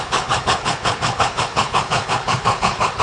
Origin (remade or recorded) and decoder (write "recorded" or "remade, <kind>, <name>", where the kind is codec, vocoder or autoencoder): remade, codec, HILCodec